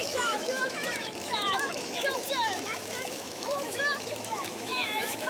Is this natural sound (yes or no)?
no